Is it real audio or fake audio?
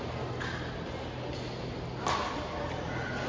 real